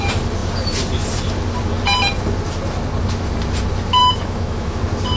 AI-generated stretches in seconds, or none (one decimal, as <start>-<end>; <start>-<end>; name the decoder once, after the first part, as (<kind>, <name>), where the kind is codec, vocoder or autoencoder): 4.0-4.8 (autoencoder, DAC-VAE)